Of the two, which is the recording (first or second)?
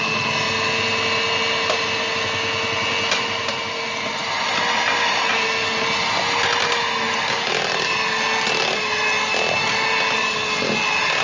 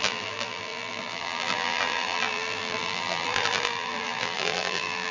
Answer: first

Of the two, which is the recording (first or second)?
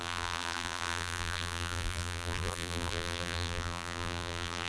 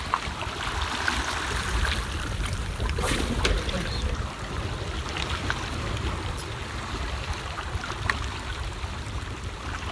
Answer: second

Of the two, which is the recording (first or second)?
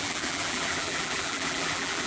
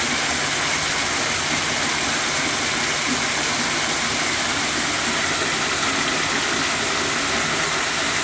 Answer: second